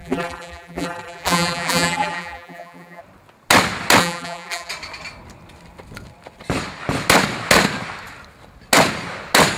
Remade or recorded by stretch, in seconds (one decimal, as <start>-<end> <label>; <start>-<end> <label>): 0.0-3.0 remade; 3.0-4.0 recorded; 4.0-4.7 remade; 4.7-9.6 recorded